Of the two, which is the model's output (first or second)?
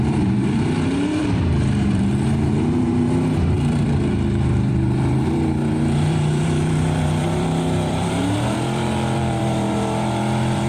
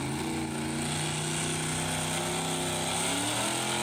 first